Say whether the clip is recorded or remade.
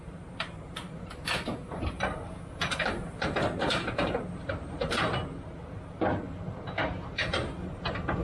remade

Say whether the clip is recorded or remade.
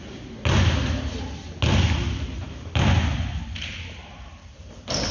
recorded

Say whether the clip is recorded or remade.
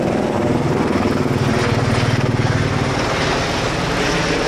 recorded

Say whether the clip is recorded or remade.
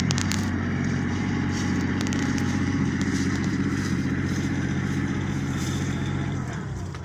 remade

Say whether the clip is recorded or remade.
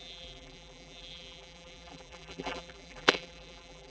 remade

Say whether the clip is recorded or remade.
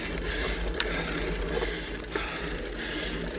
recorded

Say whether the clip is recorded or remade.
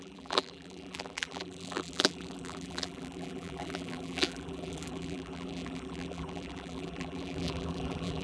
remade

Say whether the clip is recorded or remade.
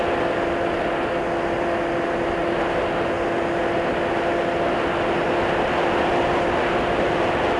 recorded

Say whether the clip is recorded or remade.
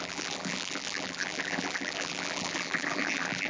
remade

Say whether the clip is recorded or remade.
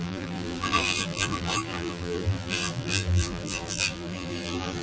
remade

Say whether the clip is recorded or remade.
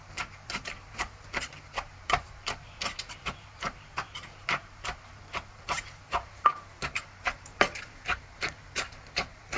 remade